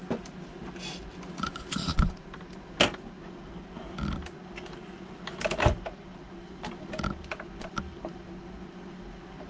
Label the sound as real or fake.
real